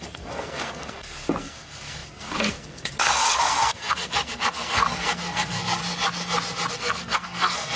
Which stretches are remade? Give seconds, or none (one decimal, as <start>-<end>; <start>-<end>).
0.0-5.8; 6.7-7.8